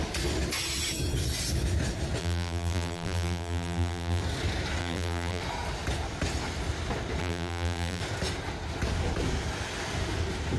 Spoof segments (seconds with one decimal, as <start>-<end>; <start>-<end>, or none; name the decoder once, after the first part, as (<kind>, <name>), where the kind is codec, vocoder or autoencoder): 2.2-4.2 (vocoder, BigVGAN v2); 4.8-5.4; 7.2-8.0